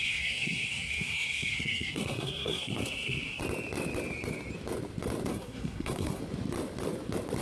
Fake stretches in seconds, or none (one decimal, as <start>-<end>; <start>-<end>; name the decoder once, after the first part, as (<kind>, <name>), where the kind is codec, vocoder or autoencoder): 0.0-3.4 (codec, SNAC); 5.3-6.2

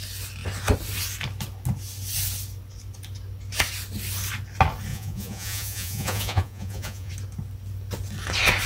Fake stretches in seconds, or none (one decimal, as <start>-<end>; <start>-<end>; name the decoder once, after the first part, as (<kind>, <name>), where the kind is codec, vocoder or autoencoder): 4.9-7.1 (vocoder, Vocos)

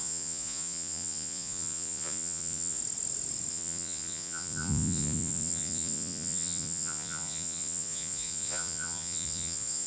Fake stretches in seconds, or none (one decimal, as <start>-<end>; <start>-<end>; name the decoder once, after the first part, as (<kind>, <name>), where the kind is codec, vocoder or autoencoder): 0.0-2.8 (vocoder, Vocos); 3.5-9.9

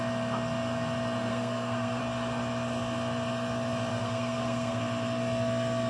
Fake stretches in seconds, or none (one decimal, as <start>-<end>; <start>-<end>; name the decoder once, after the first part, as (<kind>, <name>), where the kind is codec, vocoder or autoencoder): 1.3-2.0 (codec, SNAC); 3.9-4.8

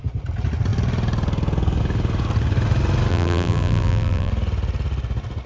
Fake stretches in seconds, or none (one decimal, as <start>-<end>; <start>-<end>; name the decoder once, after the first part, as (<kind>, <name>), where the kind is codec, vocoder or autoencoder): 3.1-4.3 (vocoder, BigVGAN v2)

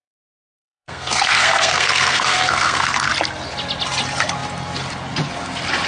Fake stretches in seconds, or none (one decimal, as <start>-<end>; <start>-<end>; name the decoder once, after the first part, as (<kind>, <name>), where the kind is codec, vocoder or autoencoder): 0.0-3.1 (codec, SNAC)